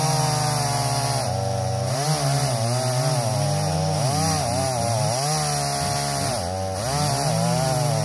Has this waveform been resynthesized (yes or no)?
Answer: no